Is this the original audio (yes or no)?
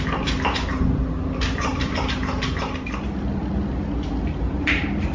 yes